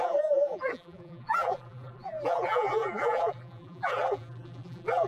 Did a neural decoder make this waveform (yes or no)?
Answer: yes